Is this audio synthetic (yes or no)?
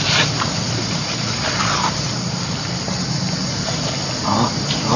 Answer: no